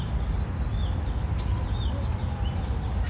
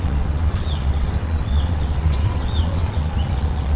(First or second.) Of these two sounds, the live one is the first